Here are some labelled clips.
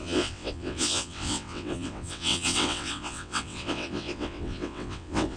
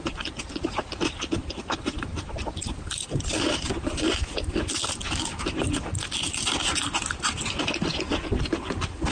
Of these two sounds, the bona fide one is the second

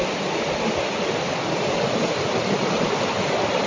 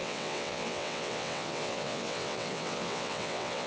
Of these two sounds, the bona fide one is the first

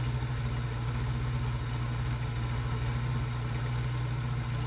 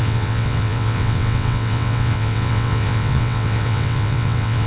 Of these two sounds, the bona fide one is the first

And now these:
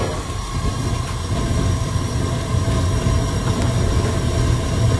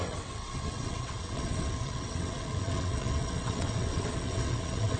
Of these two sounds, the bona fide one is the first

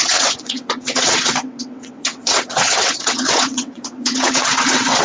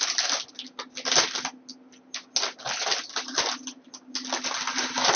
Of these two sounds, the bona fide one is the second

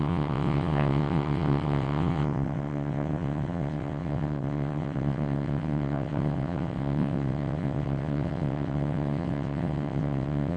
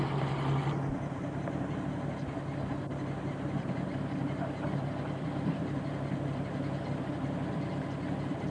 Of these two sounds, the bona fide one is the second